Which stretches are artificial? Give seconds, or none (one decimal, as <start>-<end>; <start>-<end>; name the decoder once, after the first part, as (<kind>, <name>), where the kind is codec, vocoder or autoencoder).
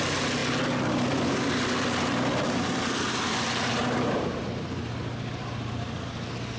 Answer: 3.8-4.4 (vocoder, BigVGAN v2)